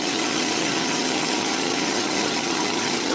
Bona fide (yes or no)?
no